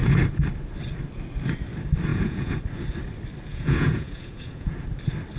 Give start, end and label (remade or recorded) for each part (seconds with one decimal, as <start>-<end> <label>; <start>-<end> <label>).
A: 0.0-2.1 recorded; 2.1-2.6 remade; 2.6-3.5 recorded; 3.5-4.9 remade; 4.9-5.4 recorded